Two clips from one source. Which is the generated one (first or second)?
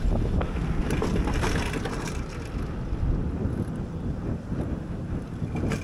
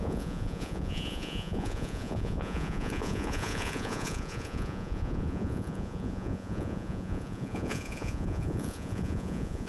second